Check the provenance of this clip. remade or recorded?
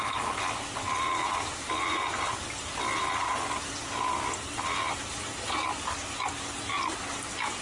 recorded